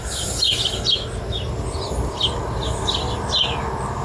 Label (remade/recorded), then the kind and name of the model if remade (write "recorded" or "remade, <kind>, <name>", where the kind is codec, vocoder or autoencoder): recorded